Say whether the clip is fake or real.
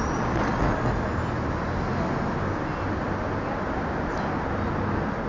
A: real